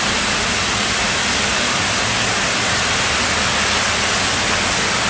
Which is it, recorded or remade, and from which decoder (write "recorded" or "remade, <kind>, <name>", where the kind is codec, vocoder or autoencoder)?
recorded